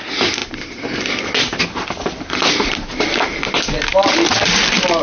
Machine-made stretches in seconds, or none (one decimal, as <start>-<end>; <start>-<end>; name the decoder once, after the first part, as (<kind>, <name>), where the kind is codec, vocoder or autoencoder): none